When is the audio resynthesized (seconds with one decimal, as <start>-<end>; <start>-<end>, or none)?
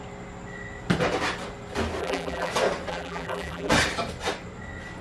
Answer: 2.0-2.5; 2.9-3.7